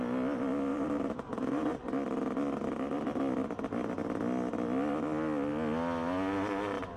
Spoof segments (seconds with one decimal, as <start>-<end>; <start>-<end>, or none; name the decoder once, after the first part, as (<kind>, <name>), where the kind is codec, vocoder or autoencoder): 0.7-1.8 (vocoder, BigVGAN v2)